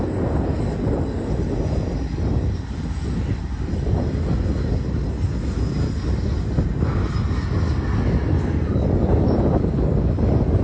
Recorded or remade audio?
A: recorded